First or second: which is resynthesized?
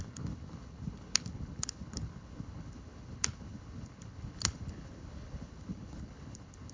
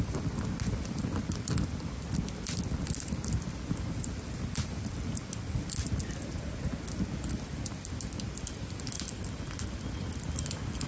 first